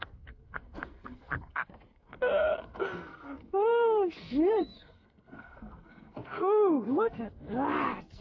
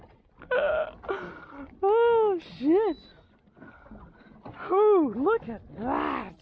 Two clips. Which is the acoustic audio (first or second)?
second